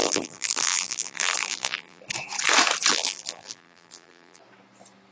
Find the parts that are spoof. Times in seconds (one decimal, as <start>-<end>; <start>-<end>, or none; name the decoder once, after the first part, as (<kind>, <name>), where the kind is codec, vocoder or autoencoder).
0.0-2.0 (vocoder, BigVGAN v2); 2.9-4.4